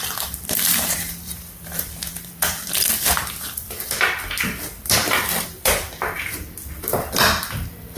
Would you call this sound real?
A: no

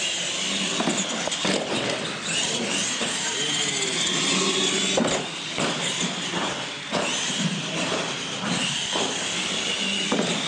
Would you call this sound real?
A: yes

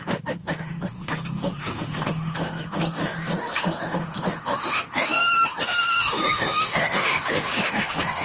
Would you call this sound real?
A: no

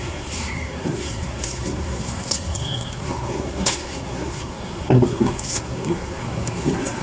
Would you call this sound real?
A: no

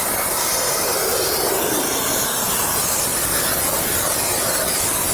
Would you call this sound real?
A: yes